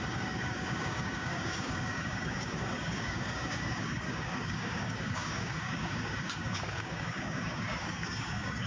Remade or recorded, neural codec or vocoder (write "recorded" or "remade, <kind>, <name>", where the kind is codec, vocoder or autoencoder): remade, codec, DAC